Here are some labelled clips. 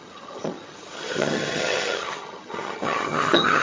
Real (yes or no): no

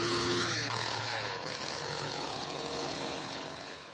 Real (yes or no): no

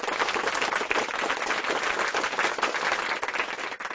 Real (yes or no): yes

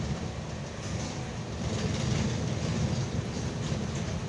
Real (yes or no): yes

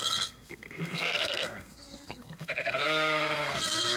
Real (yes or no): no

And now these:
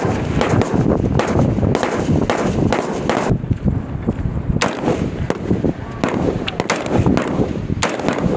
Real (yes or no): yes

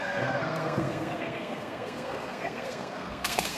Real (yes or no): no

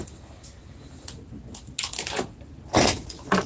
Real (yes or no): yes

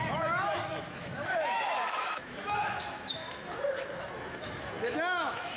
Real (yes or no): no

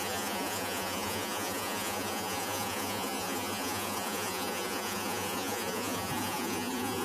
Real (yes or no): no